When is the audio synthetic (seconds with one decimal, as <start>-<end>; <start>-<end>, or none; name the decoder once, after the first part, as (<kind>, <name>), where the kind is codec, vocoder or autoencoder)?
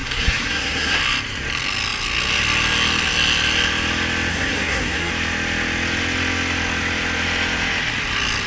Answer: 0.0-1.0 (codec, SNAC); 4.3-5.1